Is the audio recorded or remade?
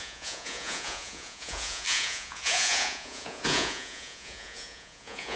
remade